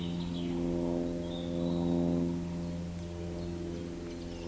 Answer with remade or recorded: recorded